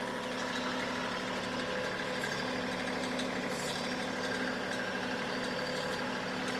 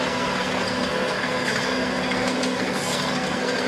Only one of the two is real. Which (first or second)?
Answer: first